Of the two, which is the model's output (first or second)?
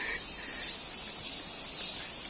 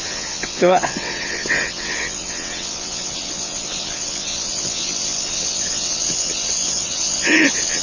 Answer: second